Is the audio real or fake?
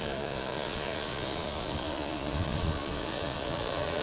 fake